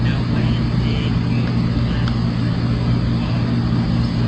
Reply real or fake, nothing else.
real